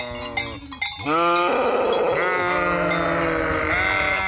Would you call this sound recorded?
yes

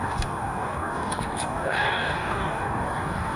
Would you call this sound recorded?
no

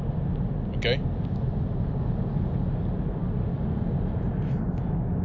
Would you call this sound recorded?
yes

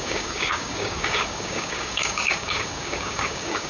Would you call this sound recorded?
no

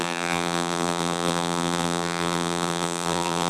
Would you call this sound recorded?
no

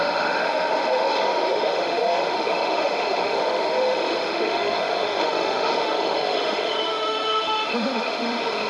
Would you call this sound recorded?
no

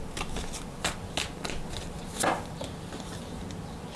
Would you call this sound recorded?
yes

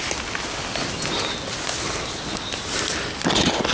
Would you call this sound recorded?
yes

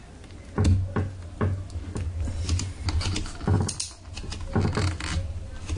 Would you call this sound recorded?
yes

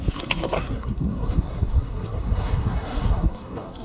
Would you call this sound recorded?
no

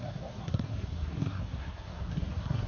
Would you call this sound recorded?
no